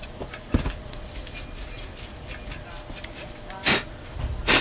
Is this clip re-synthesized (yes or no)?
no